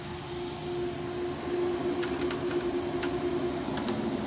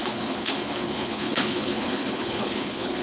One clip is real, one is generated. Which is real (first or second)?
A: first